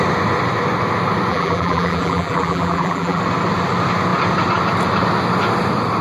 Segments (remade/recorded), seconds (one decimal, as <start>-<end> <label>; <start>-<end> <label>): 0.0-1.3 recorded; 1.3-3.2 remade; 3.2-6.0 recorded